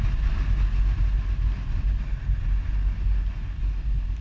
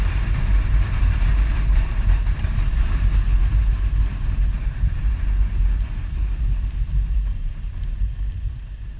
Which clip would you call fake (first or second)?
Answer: second